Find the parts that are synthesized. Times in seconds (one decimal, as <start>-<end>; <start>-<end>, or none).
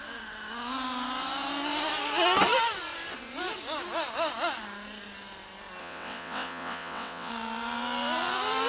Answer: 5.8-7.3